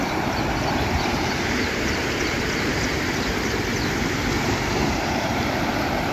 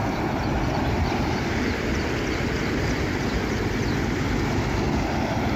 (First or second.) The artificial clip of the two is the first